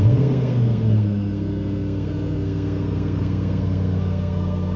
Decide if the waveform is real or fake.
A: fake